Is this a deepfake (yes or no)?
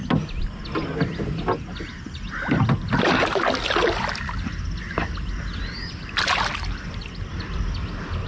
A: no